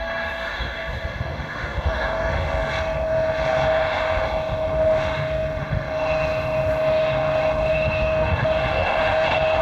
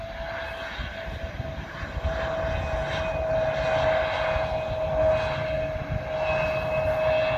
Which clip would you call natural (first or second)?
second